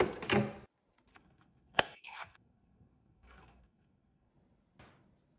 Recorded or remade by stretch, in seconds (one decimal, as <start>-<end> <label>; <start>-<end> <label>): 0.0-1.1 recorded; 1.1-4.3 remade; 4.3-5.4 recorded